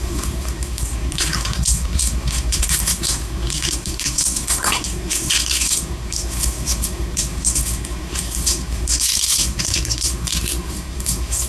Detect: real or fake fake